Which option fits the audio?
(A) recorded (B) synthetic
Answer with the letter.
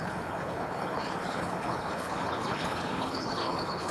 B